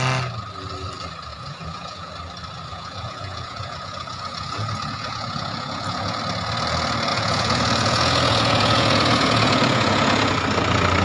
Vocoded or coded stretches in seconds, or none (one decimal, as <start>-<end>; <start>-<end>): 1.3-2.1; 2.7-6.2; 7.1-10.3